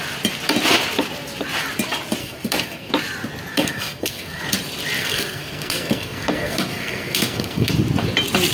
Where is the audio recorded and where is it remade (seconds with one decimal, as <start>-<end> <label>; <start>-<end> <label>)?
0.0-2.2 recorded; 2.2-2.9 remade; 2.9-3.5 recorded; 3.5-4.4 remade; 4.4-5.0 recorded; 5.0-7.7 remade; 7.7-8.5 recorded